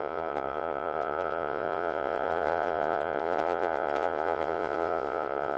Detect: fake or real fake